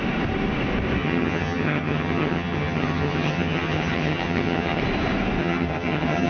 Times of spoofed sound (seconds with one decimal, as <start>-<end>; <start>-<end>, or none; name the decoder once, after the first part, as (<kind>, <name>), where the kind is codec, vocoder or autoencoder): 1.0-4.8 (vocoder, HiFi-GAN); 5.4-6.3